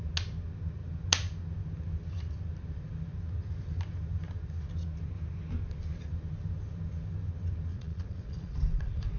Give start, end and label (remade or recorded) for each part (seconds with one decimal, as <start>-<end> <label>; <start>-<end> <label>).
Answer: 0.0-7.7 recorded; 7.7-9.2 remade